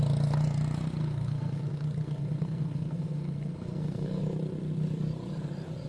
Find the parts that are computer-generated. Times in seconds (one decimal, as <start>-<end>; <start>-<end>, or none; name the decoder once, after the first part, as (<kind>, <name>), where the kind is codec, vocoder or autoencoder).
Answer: 1.0-4.2 (codec, SNAC)